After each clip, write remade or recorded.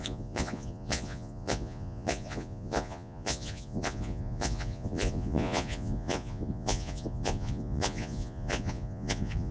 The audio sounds remade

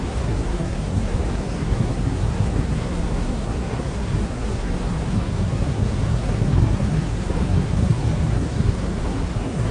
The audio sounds remade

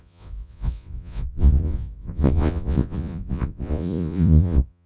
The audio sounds remade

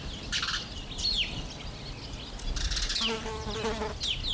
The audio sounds recorded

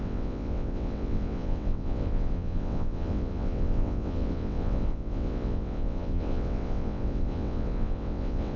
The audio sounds remade